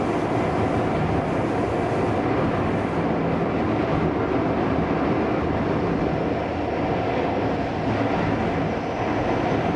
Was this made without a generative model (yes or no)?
yes